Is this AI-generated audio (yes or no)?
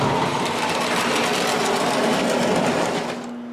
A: no